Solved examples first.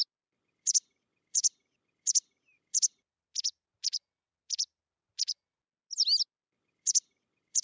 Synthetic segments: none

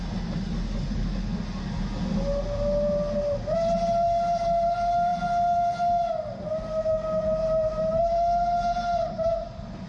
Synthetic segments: 7.4-8.0 (vocoder, BigVGAN v2)

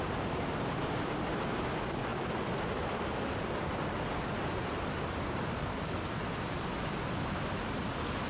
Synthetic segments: none

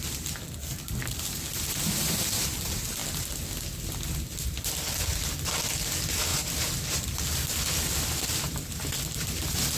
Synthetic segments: none

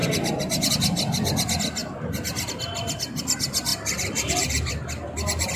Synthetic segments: 3.7-4.7 (vocoder, BigVGAN v2)

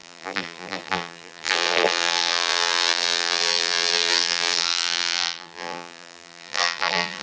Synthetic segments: 0.0-7.2 (vocoder, BigVGAN v2)

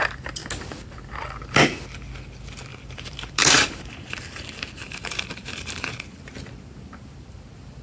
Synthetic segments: 2.7-6.3 (vocoder, BigVGAN v2)